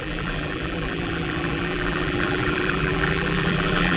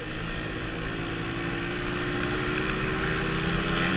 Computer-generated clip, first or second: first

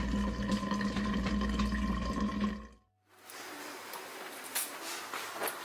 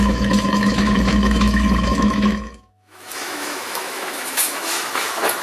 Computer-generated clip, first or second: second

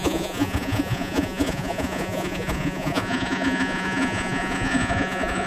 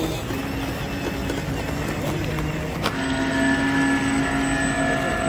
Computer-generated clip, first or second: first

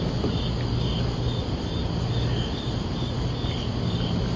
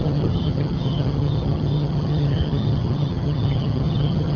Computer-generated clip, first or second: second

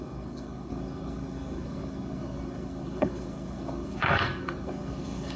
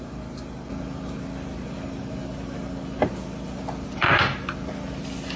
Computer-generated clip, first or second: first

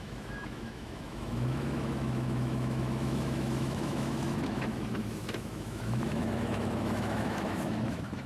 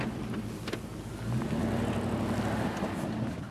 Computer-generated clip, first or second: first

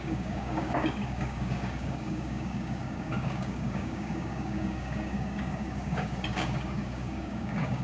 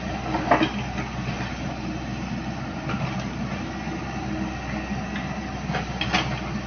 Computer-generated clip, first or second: first